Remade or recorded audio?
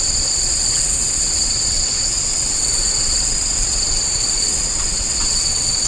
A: remade